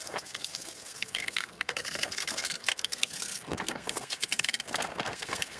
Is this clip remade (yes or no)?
yes